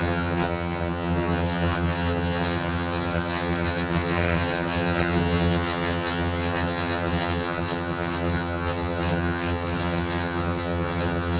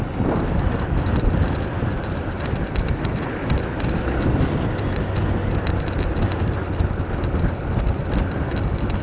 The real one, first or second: second